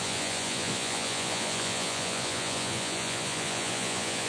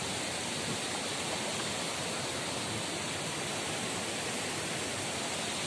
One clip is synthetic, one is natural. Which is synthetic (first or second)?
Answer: first